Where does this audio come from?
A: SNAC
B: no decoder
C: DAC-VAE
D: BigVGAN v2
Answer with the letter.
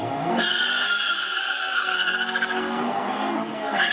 A